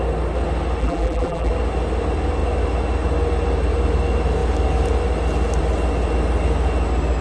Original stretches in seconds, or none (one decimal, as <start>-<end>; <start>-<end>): 0.0-0.8; 1.5-7.2